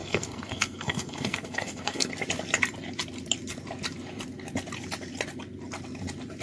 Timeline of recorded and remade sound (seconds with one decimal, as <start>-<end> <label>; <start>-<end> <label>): 0.0-2.1 remade; 2.1-6.4 recorded